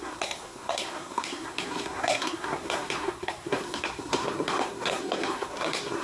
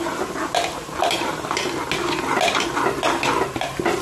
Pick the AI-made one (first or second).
first